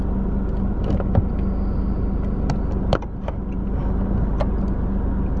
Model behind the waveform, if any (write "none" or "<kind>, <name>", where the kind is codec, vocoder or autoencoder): none